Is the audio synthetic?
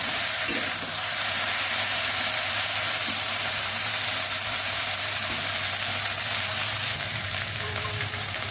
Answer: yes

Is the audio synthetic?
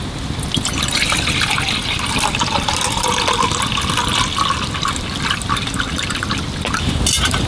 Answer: no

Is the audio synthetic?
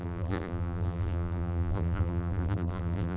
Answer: yes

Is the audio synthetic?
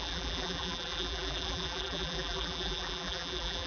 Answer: yes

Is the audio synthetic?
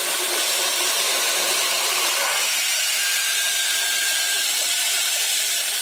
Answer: yes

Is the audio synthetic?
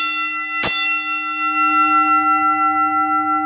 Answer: no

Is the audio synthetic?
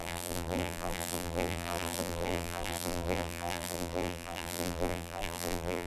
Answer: yes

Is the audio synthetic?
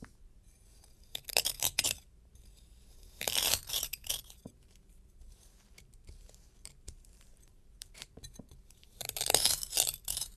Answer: yes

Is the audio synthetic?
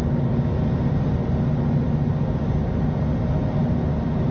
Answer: no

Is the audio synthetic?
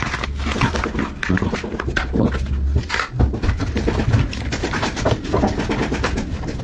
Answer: no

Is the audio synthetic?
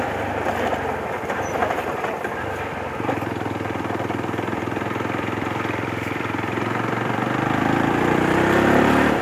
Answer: yes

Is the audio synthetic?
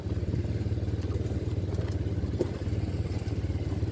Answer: no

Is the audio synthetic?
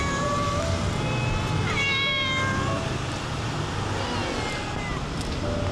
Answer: no